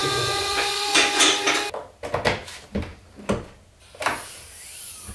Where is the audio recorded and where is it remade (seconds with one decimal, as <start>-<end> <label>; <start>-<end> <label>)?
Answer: 0.0-1.3 remade; 1.3-5.1 recorded